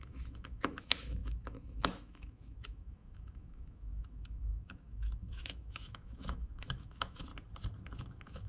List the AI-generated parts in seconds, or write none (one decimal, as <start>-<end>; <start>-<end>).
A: 0.0-7.3; 8.0-8.5